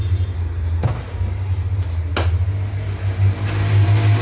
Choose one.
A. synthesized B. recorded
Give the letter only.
B